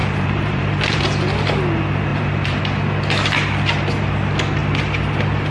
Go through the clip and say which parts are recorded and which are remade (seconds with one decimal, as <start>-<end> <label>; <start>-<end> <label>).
0.0-1.0 remade; 1.0-2.1 recorded; 2.1-2.6 remade; 2.6-5.5 recorded